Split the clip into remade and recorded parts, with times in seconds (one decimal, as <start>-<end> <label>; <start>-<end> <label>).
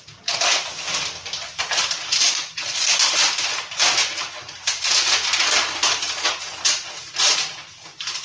0.0-8.2 recorded